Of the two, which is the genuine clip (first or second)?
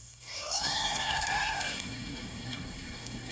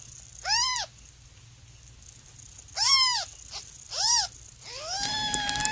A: second